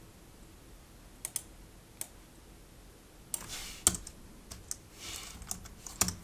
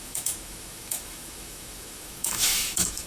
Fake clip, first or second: second